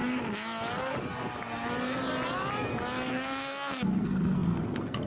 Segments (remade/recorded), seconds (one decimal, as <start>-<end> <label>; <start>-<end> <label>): 0.0-3.1 recorded; 3.1-5.1 remade